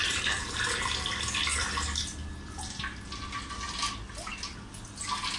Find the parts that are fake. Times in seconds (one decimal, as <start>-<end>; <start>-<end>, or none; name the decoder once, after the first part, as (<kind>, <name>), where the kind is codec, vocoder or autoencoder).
0.0-0.6 (vocoder, BigVGAN v2)